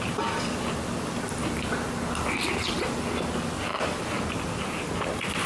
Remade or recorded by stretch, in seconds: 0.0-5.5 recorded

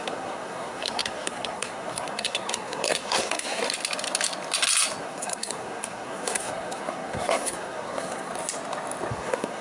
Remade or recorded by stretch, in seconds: 0.0-3.6 remade; 3.6-5.0 recorded; 5.0-8.3 remade; 8.3-9.1 recorded; 9.1-9.6 remade

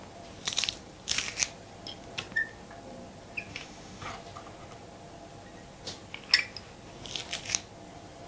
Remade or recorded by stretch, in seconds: 0.0-3.5 recorded; 3.5-4.1 remade; 4.1-8.3 recorded

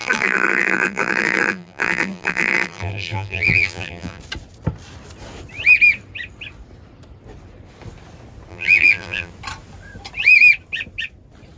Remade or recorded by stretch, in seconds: 0.0-4.2 remade; 4.2-8.5 recorded; 8.5-9.3 remade; 9.3-11.6 recorded

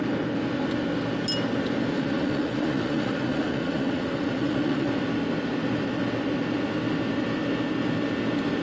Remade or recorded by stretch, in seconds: 0.0-1.9 recorded; 1.9-4.9 remade; 4.9-8.6 recorded

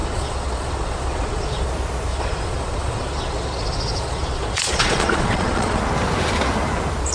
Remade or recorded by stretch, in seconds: 0.0-1.7 remade; 1.7-2.1 recorded; 2.1-5.8 remade; 5.8-7.1 recorded